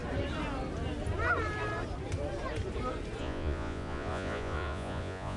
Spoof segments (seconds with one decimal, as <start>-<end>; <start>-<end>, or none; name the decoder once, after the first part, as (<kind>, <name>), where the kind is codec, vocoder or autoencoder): 3.2-5.4 (vocoder, Vocos)